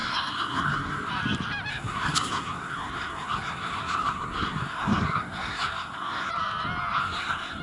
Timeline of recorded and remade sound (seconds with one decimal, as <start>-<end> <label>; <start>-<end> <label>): 0.0-1.1 remade; 1.1-1.7 recorded; 1.7-6.3 remade; 6.3-7.0 recorded; 7.0-7.6 remade